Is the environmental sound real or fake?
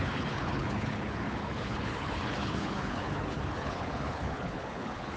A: fake